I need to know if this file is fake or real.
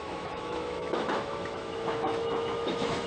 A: fake